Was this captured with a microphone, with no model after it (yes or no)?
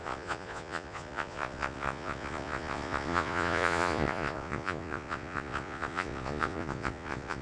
no